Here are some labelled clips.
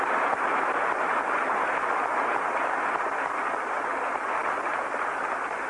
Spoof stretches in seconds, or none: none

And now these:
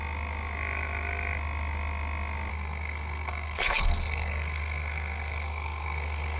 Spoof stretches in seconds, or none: 2.5-6.4

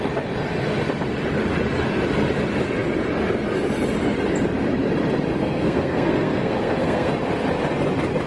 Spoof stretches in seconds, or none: 5.4-7.1

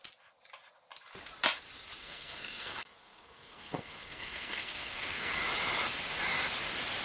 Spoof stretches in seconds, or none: 2.0-5.4

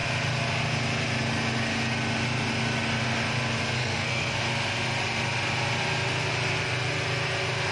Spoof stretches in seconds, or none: 3.8-4.4